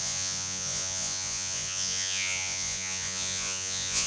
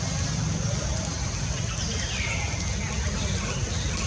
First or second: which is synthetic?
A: first